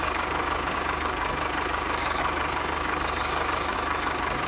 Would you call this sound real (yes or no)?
no